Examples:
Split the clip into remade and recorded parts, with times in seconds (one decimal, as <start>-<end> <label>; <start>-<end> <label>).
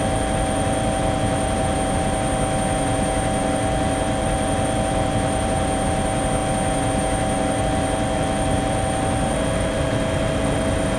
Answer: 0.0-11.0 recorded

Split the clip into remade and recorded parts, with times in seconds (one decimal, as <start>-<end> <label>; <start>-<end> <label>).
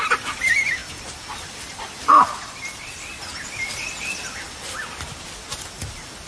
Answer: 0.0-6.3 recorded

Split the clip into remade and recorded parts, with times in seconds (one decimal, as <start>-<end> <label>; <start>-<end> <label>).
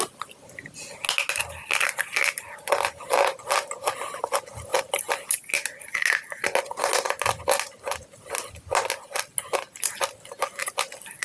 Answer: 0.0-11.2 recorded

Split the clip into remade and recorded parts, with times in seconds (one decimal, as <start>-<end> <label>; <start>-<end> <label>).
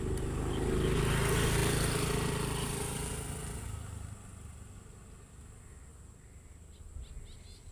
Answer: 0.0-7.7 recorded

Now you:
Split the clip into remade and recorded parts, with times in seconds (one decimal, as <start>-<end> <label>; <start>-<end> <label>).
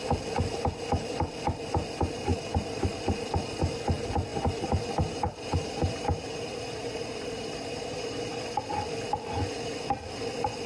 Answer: 0.0-2.3 recorded; 2.3-2.9 remade; 2.9-4.3 recorded; 4.3-8.6 remade; 8.6-10.7 recorded